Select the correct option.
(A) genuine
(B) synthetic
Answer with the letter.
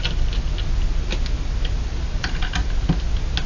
A